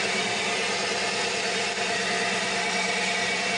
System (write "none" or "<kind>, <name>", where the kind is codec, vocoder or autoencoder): none